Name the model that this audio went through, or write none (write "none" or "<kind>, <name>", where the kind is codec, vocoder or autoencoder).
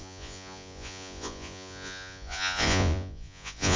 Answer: vocoder, Vocos